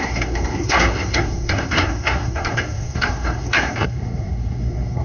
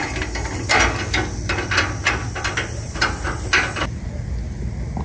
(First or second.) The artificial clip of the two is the first